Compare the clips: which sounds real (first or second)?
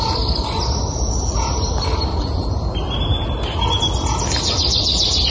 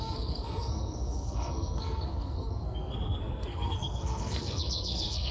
first